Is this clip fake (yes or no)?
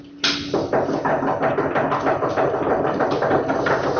no